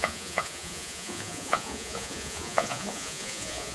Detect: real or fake fake